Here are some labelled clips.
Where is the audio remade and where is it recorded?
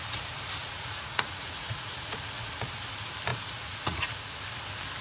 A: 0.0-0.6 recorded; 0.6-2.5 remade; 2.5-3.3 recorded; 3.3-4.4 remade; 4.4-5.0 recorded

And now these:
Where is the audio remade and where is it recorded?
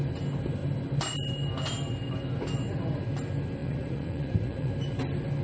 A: 0.0-3.6 recorded; 3.6-4.7 remade; 4.7-5.4 recorded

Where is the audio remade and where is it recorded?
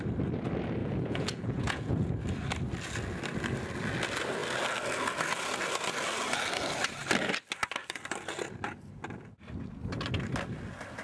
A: 0.0-0.8 recorded; 0.8-2.1 remade; 2.1-11.0 recorded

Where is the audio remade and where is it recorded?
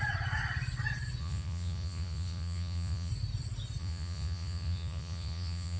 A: 0.0-1.2 recorded; 1.2-3.1 remade; 3.1-3.8 recorded; 3.8-5.8 remade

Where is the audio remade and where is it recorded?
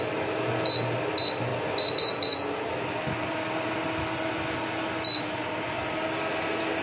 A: 0.0-6.8 recorded